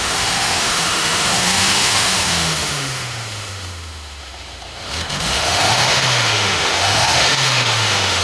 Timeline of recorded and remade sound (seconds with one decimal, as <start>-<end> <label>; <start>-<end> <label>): 0.0-8.2 remade